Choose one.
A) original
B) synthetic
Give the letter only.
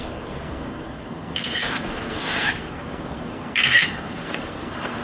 B